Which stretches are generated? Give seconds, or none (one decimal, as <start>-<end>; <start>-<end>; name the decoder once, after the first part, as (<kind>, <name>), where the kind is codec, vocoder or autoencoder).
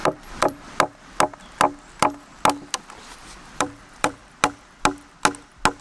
0.0-0.8 (vocoder, BigVGAN v2); 3.1-4.3